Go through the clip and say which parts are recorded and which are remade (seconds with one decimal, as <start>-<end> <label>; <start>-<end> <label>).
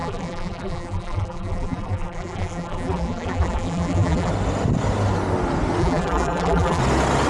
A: 0.0-4.3 remade; 4.3-5.8 recorded; 5.8-6.8 remade; 6.8-7.3 recorded